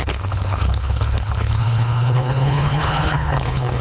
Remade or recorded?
remade